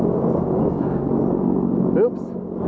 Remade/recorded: recorded